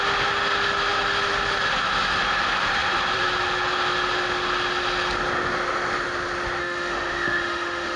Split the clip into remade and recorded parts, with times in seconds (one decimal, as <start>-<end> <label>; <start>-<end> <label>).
0.0-6.6 recorded; 6.6-8.0 remade